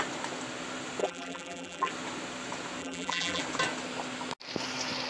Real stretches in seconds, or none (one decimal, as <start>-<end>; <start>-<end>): 0.0-1.0; 1.9-2.8; 3.4-5.1